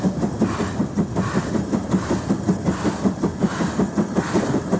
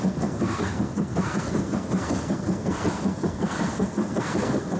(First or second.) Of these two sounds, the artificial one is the second